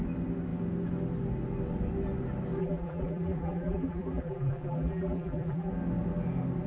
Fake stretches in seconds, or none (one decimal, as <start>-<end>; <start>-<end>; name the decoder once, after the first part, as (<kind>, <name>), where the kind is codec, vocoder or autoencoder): 2.6-5.7 (vocoder, BigVGAN v2)